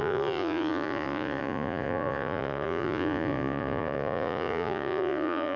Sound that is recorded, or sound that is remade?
remade